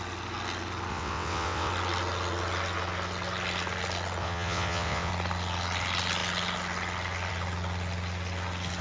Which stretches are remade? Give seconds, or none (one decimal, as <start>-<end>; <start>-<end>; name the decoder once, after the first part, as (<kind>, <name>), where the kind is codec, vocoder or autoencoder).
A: 0.9-1.7 (vocoder, WaveNeXt); 4.2-5.1